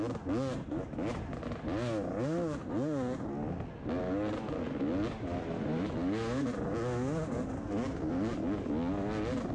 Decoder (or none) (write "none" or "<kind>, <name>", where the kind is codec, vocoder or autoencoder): none